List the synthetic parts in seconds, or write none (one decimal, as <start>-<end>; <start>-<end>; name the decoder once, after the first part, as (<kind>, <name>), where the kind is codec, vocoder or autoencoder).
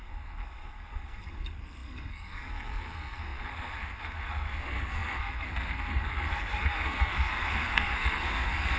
0.0-8.8 (codec, SNAC)